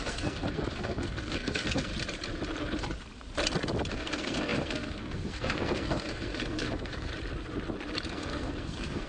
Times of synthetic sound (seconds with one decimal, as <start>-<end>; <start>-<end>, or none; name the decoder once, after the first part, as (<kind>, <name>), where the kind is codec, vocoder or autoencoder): 0.0-1.9 (codec, SNAC); 3.9-7.1; 8.1-9.1